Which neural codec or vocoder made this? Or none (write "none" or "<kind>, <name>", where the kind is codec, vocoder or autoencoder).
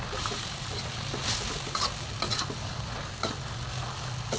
none